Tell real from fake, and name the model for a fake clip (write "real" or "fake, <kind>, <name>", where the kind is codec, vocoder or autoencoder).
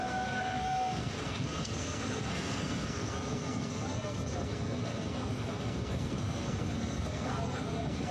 fake, codec, SNAC